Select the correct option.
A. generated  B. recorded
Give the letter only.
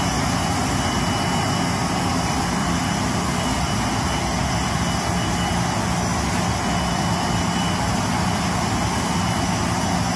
B